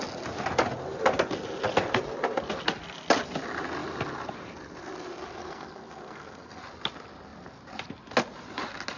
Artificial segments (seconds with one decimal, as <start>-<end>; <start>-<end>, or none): 5.4-6.6

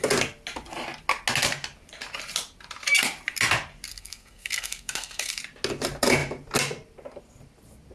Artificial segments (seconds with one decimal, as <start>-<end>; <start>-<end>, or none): 3.9-5.4

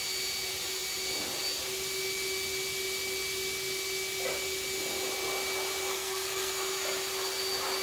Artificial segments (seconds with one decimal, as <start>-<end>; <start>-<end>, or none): 5.9-6.5

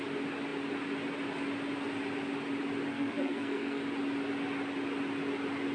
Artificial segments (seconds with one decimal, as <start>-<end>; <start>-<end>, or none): 2.9-3.8

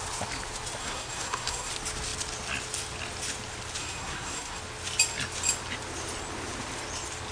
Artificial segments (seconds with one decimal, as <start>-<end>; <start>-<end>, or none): 0.8-1.7; 3.8-4.6

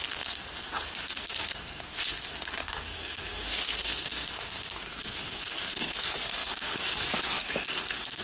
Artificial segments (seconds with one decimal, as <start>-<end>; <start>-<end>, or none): 0.0-8.2

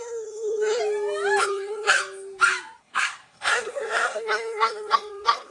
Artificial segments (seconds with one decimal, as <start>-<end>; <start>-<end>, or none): 0.0-0.8; 1.4-2.0; 2.8-5.5

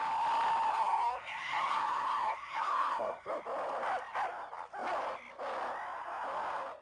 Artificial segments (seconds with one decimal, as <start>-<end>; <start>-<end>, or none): 0.7-3.3